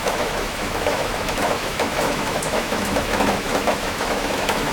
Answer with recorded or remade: remade